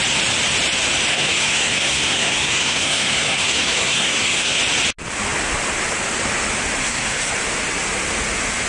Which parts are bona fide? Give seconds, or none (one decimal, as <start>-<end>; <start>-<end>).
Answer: 0.0-1.1; 4.6-6.8; 7.3-8.7